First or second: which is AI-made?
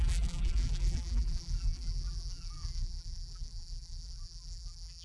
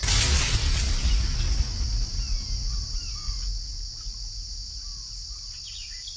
first